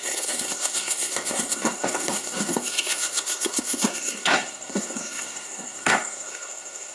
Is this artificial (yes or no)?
yes